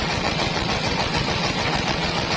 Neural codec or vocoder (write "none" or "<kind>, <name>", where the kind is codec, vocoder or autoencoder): vocoder, WaveNeXt